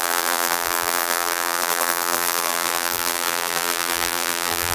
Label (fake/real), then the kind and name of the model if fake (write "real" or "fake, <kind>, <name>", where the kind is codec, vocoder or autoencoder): fake, vocoder, BigVGAN v2